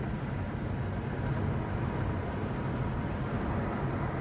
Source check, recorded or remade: recorded